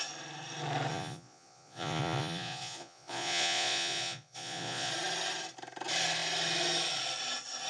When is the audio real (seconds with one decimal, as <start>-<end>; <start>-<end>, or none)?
0.0-0.9; 4.9-7.7